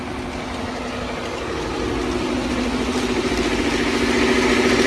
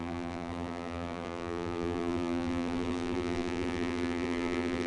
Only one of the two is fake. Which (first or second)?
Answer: second